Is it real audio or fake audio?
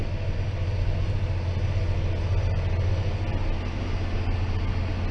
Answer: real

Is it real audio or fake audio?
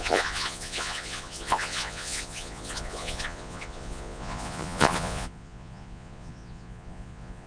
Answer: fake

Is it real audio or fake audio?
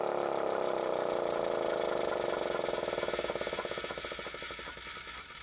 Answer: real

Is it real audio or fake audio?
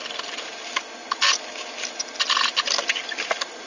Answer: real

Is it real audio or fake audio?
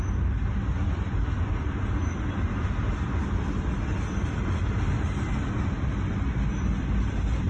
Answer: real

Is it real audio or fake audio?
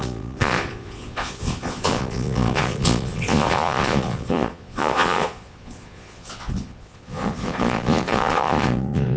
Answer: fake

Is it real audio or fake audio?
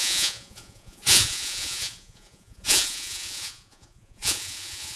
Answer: fake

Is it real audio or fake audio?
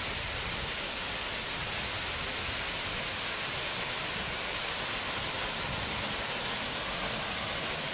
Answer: real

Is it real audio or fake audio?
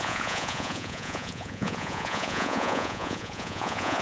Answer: fake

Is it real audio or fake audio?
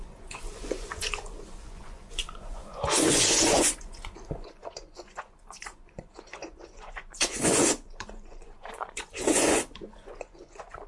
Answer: fake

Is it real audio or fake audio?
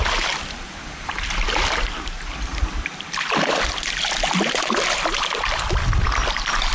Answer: real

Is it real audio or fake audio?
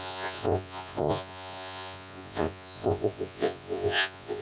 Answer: fake